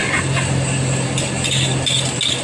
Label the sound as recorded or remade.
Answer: recorded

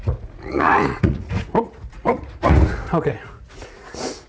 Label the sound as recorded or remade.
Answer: remade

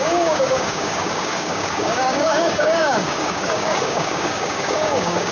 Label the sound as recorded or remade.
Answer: remade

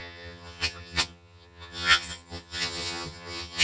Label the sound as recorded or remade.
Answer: remade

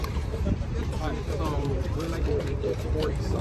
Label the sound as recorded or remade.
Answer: remade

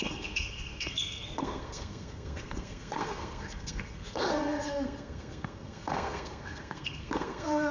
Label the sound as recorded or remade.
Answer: remade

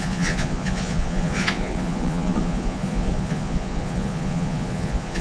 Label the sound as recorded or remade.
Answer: remade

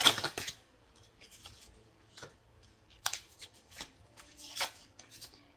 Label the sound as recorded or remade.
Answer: remade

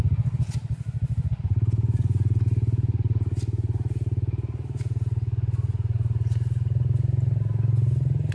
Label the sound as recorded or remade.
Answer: recorded